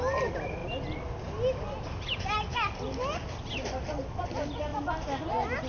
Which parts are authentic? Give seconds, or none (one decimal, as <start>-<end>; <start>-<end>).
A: 0.0-5.7